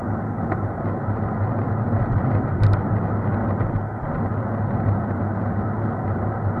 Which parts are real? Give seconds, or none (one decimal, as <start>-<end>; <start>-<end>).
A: 0.0-6.6